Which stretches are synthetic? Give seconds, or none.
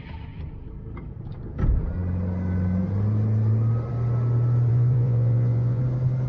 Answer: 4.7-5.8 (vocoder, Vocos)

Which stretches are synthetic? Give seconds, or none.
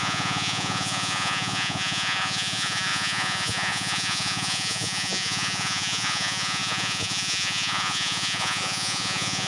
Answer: 0.0-9.5 (vocoder, Vocos)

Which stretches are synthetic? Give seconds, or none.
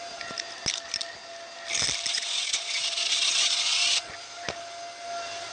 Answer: 2.1-4.1 (vocoder, Vocos)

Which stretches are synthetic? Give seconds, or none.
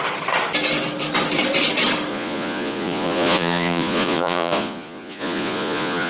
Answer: 2.1-6.1 (vocoder, Vocos)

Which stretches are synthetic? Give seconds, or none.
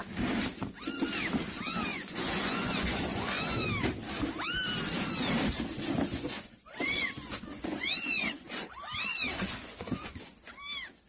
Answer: 1.9-3.7 (vocoder, Vocos); 6.1-10.5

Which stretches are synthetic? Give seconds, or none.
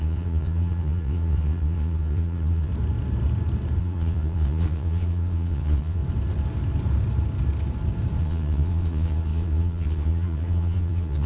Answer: 0.0-2.7 (vocoder, Vocos); 3.8-6.0; 8.2-11.3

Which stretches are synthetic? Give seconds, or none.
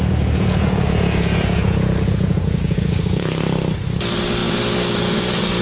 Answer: 0.0-3.4 (vocoder, Vocos)